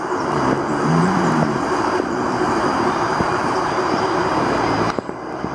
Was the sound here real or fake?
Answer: fake